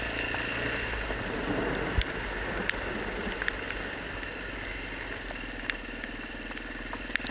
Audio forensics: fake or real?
real